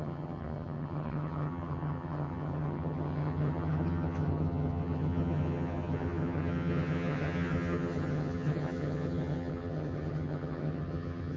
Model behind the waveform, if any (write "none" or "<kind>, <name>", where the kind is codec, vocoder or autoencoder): vocoder, HiFi-GAN